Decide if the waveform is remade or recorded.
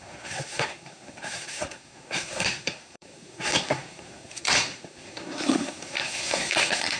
remade